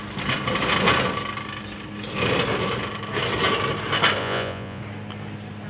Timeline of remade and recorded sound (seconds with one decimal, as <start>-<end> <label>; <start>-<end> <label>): 0.0-4.2 recorded; 4.2-4.8 remade; 4.8-5.7 recorded